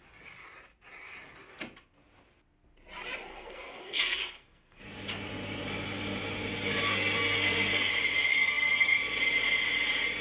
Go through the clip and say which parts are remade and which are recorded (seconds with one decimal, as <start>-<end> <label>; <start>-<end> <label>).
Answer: 0.0-3.3 recorded; 3.3-4.8 remade; 4.8-6.9 recorded; 6.9-7.9 remade; 7.9-8.3 recorded; 8.3-9.0 remade; 9.0-10.2 recorded